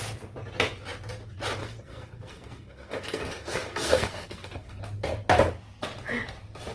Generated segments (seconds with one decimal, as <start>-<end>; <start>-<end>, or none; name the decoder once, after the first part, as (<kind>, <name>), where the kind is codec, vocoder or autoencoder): 1.6-4.8 (codec, SNAC)